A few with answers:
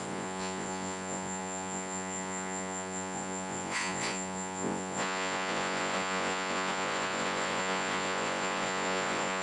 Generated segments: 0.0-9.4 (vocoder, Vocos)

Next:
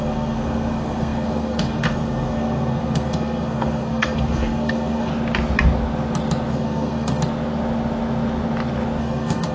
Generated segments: 0.0-5.1 (codec, SNAC); 6.5-7.2; 9.0-9.5